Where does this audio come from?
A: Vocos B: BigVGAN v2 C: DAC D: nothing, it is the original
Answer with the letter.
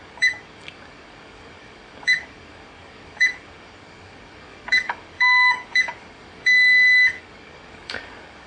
C